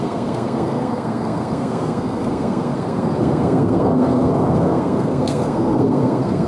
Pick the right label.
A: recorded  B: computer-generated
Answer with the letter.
B